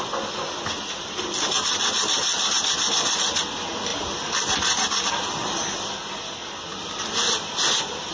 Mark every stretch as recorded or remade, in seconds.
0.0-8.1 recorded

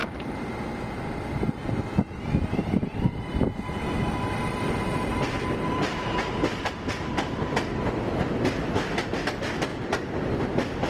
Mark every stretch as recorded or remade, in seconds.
0.0-10.9 recorded

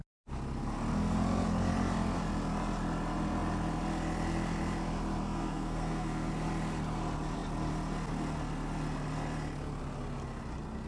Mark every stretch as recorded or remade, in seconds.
0.0-5.2 recorded; 5.2-6.3 remade; 6.3-10.9 recorded

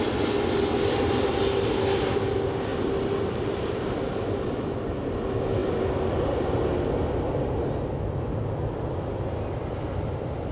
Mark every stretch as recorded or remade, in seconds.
0.0-10.5 recorded

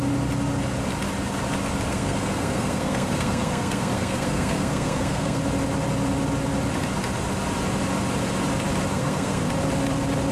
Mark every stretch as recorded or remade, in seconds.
0.0-1.9 recorded; 1.9-5.4 remade; 5.4-8.9 recorded; 8.9-9.5 remade; 9.5-10.3 recorded